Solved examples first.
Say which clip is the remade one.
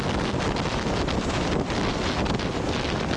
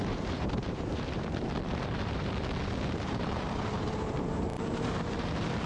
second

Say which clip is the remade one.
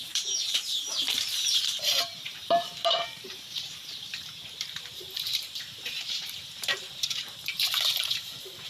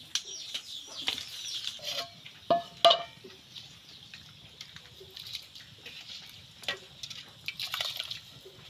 first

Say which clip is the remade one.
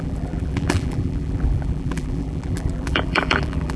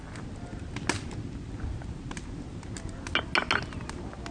first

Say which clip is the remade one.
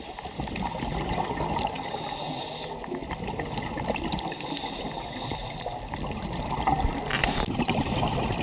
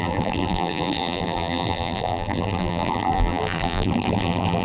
second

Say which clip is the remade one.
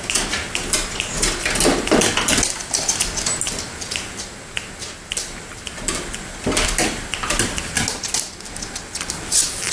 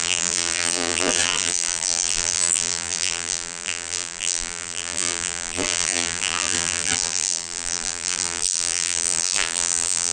second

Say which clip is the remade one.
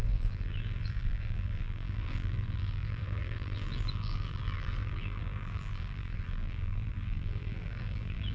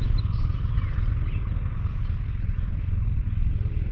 first